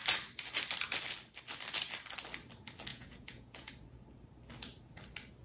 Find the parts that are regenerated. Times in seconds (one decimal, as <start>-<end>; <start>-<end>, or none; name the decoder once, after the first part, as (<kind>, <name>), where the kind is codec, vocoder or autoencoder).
2.9-3.7 (vocoder, Vocos)